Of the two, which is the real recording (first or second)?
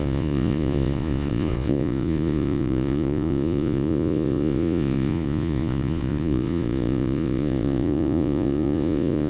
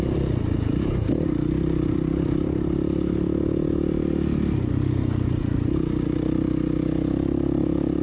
second